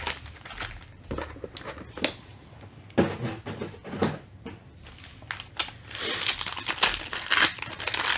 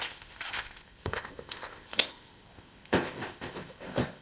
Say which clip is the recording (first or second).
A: first